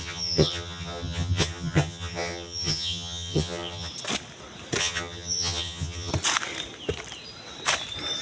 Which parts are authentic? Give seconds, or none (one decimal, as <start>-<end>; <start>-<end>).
3.9-4.8; 6.1-8.2